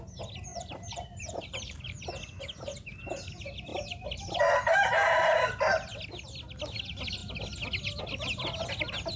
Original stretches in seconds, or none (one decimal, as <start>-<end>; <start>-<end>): 0.0-0.5; 2.2-9.2

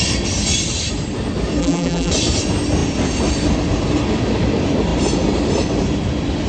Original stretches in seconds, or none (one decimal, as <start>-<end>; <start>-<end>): 0.0-1.6; 2.1-6.5